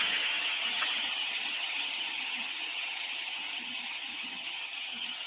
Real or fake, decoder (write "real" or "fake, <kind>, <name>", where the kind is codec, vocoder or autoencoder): fake, vocoder, HiFi-GAN